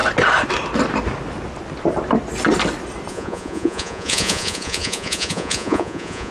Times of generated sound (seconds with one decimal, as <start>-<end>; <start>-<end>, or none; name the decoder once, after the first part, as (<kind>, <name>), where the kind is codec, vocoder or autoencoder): 3.1-6.3 (vocoder, Vocos)